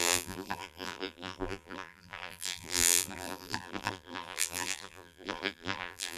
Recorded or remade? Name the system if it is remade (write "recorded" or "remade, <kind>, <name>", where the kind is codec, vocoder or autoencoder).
remade, vocoder, BigVGAN v2